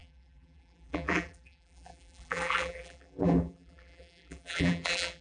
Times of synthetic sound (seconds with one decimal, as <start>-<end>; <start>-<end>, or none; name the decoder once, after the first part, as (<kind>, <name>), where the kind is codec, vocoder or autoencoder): 0.0-5.2 (vocoder, BigVGAN v2)